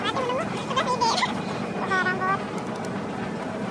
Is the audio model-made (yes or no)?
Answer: no